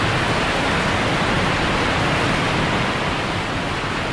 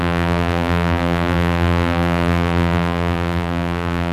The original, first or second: first